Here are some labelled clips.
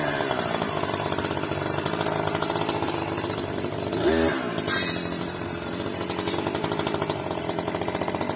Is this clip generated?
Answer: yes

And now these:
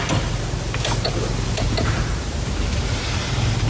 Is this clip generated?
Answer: no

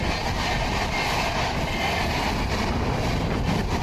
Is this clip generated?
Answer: no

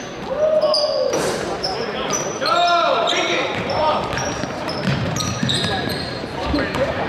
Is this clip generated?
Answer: yes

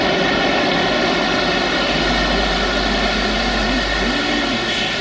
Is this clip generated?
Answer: no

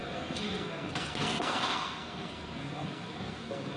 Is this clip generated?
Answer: yes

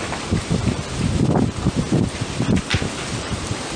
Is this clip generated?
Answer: yes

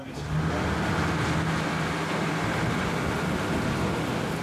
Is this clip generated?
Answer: no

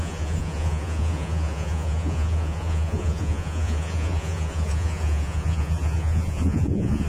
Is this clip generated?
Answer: yes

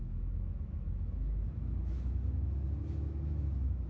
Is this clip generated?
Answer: yes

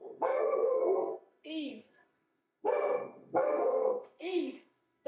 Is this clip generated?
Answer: yes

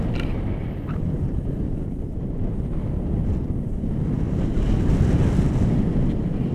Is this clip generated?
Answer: no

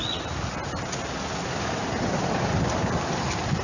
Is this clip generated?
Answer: no